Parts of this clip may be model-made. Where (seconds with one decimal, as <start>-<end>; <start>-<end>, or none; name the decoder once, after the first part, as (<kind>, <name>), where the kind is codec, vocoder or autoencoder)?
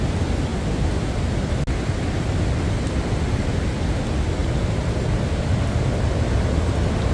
0.0-0.5 (vocoder, BigVGAN v2); 2.7-4.4